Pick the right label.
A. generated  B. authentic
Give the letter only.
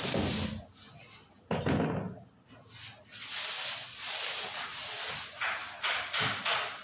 B